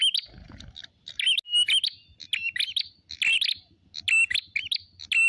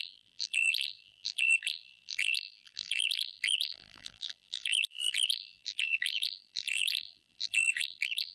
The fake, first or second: second